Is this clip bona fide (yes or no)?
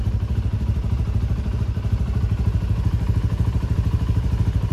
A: no